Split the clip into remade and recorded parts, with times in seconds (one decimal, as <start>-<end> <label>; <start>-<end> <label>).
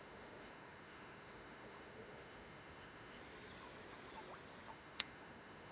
0.0-3.2 remade; 3.2-4.7 recorded; 4.7-5.7 remade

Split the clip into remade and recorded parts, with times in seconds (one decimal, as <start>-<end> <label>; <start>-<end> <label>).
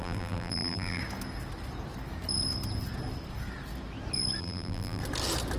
0.0-1.0 remade; 1.0-4.4 recorded; 4.4-5.0 remade; 5.0-5.6 recorded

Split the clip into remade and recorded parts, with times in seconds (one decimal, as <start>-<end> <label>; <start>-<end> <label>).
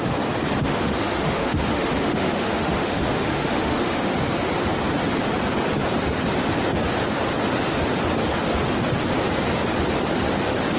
0.0-0.7 recorded; 0.7-4.1 remade; 4.1-10.8 recorded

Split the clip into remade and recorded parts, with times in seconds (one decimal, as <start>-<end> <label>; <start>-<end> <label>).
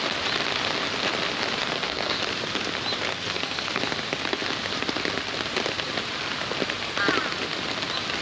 0.0-1.6 recorded; 1.6-2.2 remade; 2.2-3.1 recorded; 3.1-3.8 remade; 3.8-8.2 recorded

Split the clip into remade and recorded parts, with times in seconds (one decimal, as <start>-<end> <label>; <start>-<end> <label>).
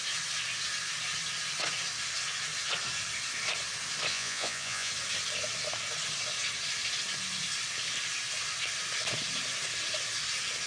0.0-4.1 recorded; 4.1-4.9 remade; 4.9-10.7 recorded